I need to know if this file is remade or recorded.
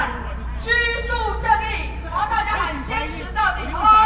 remade